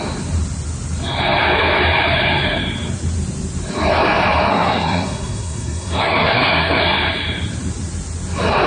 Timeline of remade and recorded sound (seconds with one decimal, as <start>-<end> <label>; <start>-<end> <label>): 0.0-4.5 recorded; 4.5-6.8 remade; 6.8-8.7 recorded

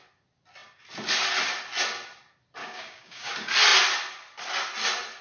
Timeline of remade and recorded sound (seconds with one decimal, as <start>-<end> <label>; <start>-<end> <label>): 0.0-2.6 recorded; 2.6-3.3 remade; 3.3-5.2 recorded

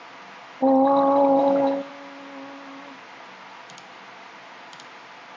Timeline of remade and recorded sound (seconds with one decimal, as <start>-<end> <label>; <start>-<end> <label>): 0.0-1.4 recorded; 1.4-1.9 remade; 1.9-5.4 recorded